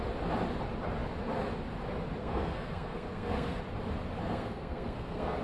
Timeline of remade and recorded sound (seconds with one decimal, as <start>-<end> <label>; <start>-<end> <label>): 0.0-2.2 recorded; 2.2-3.6 remade; 3.6-4.2 recorded; 4.2-5.4 remade